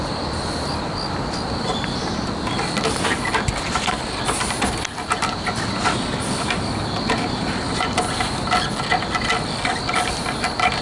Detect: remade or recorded recorded